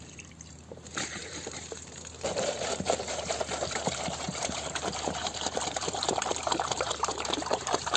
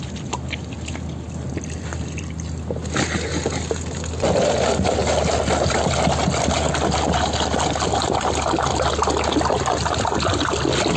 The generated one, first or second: first